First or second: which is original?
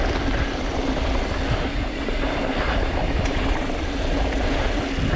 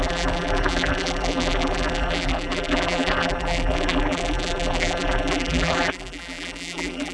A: first